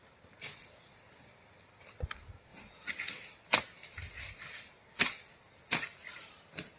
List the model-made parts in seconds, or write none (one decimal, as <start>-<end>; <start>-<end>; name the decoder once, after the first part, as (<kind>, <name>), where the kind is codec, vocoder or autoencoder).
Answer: none